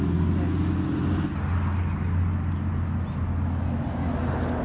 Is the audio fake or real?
real